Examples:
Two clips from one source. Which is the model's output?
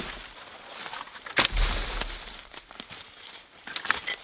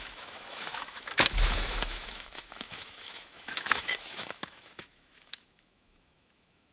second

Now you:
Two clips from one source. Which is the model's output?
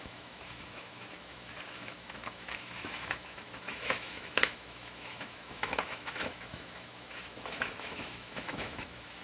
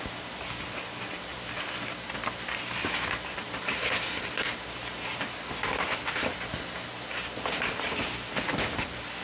first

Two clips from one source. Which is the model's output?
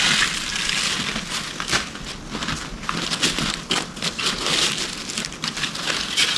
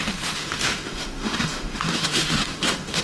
second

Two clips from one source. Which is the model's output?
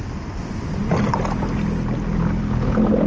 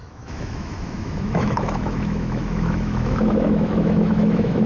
second